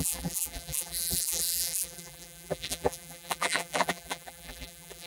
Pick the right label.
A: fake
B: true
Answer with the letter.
A